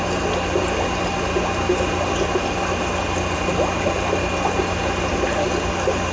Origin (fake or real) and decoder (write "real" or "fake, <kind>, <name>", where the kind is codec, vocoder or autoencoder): real